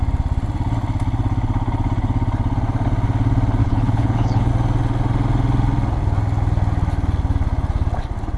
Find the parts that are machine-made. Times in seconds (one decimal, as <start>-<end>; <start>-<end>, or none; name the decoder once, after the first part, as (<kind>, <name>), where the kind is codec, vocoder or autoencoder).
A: 3.6-4.5 (codec, HILCodec)